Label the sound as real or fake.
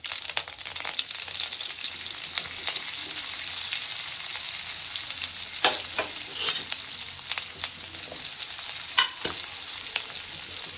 real